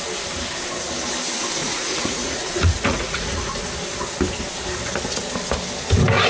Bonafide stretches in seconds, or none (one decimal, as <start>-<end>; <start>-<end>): 0.0-1.6; 3.6-6.3